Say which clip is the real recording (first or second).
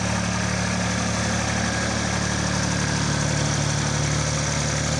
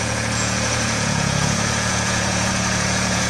first